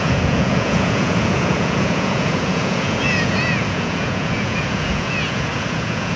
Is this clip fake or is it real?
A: fake